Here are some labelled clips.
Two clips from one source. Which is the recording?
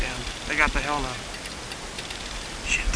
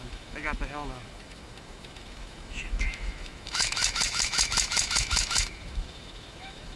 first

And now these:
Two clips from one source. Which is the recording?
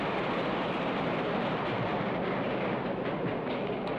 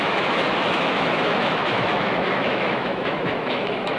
first